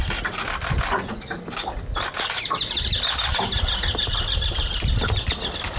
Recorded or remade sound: recorded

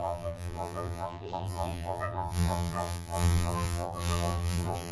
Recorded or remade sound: remade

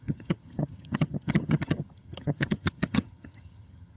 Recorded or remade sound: remade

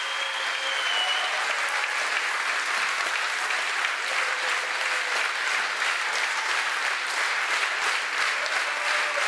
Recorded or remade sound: recorded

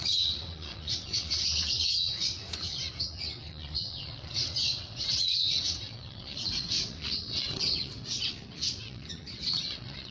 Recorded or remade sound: remade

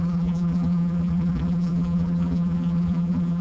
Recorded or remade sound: remade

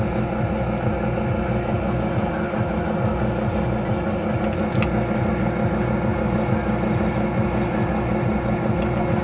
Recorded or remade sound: recorded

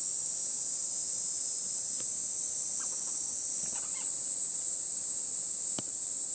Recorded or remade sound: recorded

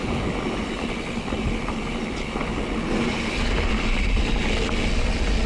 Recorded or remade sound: recorded